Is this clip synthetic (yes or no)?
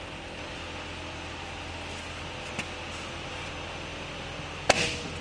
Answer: no